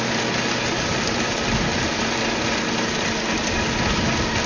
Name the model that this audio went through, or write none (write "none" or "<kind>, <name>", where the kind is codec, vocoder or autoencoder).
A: none